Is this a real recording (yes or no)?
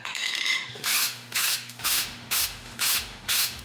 no